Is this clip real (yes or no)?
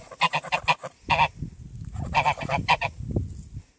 yes